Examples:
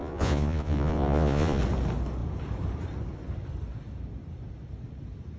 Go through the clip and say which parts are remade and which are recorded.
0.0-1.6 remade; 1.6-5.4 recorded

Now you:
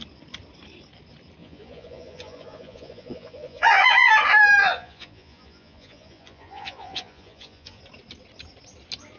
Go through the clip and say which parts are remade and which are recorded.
0.0-1.4 recorded; 1.4-4.1 remade; 4.1-4.6 recorded; 4.6-7.8 remade; 7.8-9.2 recorded

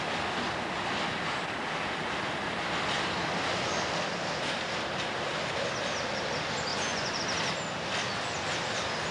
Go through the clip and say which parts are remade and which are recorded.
0.0-6.7 recorded; 6.7-7.2 remade; 7.2-9.1 recorded

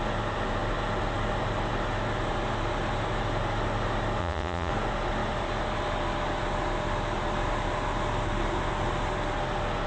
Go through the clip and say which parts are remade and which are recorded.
0.0-4.2 recorded; 4.2-4.7 remade; 4.7-9.9 recorded